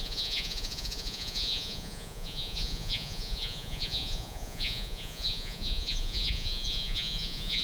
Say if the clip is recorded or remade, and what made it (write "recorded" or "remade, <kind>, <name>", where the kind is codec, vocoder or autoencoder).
remade, vocoder, Vocos